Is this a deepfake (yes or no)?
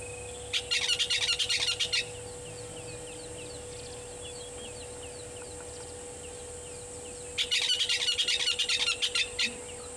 no